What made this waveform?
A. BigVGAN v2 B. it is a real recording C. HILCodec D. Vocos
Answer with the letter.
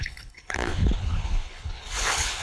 C